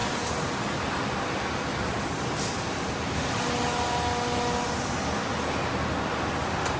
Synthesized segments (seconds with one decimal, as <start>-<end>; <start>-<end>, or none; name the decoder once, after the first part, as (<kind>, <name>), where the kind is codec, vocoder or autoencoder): none